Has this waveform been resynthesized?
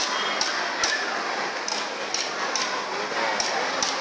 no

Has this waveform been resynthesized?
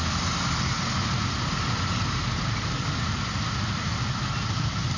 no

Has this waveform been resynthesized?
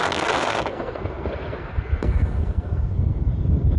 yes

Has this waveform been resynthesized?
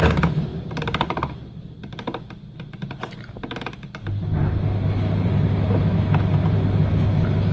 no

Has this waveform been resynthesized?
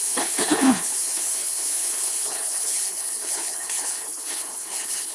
yes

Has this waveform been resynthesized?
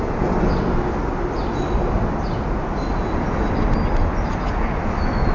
no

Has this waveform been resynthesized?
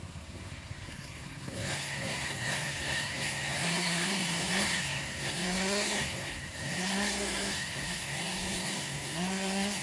yes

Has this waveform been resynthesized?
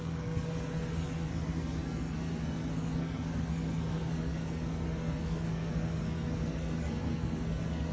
yes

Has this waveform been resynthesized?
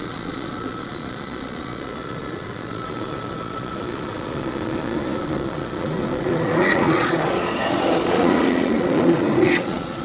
yes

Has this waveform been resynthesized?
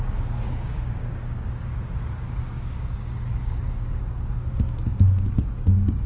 yes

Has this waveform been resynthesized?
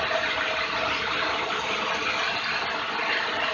no